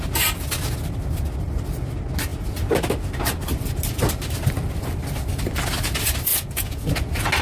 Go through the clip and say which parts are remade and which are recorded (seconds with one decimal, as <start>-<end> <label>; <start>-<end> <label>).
0.0-6.3 recorded; 6.3-6.9 remade; 6.9-7.4 recorded